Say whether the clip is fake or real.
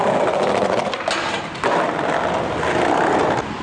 real